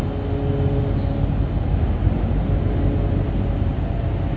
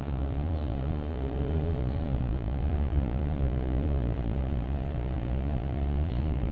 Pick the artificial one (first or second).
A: second